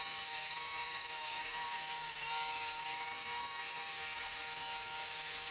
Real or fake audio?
fake